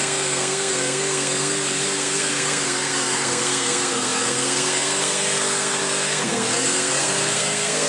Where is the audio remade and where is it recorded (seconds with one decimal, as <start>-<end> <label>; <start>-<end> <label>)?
0.0-7.9 remade